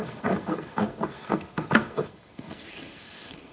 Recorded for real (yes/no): no